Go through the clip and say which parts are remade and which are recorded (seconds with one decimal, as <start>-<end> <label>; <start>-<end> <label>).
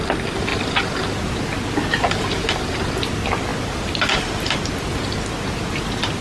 0.0-6.2 recorded